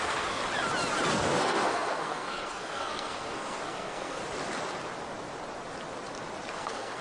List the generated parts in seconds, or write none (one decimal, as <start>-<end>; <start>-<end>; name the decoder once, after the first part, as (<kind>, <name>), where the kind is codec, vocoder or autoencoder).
0.0-0.4 (codec, SNAC); 1.1-4.2; 6.5-7.0